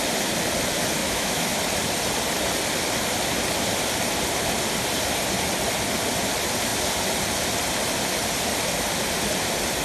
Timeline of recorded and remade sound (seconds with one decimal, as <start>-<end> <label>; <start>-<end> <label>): 0.0-1.0 recorded; 1.0-1.6 remade; 1.6-9.8 recorded